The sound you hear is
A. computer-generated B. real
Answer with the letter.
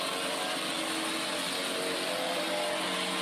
B